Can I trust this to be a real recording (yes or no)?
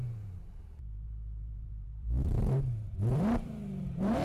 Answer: no